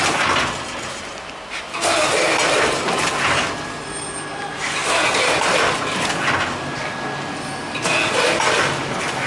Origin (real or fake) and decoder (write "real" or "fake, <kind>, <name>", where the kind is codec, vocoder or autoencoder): real